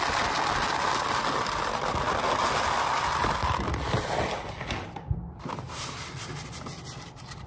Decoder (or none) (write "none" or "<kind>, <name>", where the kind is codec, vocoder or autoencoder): none